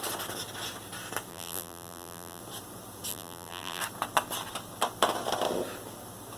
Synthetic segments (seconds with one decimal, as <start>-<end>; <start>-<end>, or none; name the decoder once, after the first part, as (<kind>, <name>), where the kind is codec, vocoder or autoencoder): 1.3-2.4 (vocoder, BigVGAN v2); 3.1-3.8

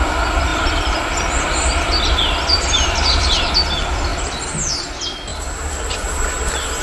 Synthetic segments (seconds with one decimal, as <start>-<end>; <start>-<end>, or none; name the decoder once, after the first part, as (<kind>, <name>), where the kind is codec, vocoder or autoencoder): 0.5-3.5 (vocoder, BigVGAN v2)

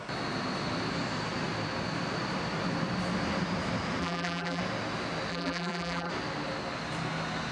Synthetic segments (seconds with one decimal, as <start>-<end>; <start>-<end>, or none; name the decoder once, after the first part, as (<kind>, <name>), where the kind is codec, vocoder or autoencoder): 4.0-4.6 (vocoder, BigVGAN v2); 5.3-6.1

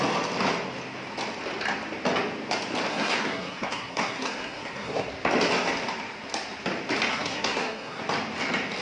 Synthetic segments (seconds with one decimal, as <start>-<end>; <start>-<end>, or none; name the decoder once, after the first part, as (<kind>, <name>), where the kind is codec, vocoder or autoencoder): 2.9-5.1 (codec, SNAC); 7.1-8.0

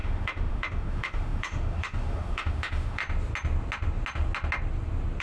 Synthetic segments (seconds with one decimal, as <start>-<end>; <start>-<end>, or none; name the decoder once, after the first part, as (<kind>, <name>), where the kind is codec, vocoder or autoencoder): 0.0-3.0 (autoencoder, DAC-VAE)

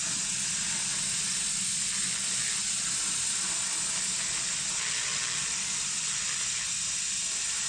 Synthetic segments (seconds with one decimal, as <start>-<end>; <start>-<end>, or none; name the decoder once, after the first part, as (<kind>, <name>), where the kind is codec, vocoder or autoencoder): none